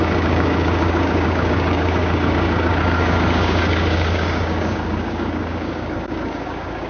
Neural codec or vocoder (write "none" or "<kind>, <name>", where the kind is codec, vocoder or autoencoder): codec, DAC